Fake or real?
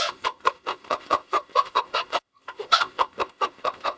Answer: fake